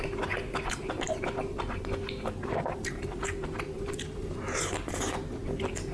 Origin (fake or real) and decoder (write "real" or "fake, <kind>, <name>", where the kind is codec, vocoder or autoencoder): real